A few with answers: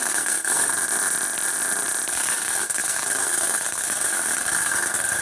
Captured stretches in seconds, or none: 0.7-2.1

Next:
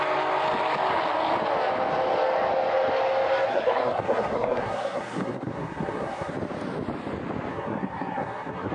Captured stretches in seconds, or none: 0.0-3.5; 6.3-7.5